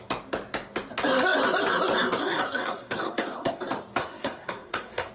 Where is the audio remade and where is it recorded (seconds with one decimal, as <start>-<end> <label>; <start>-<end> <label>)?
0.0-2.2 recorded; 2.2-3.6 remade; 3.6-4.0 recorded; 4.0-5.1 remade